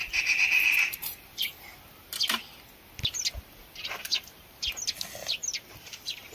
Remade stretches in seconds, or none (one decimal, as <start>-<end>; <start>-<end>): 0.0-1.5; 3.5-4.6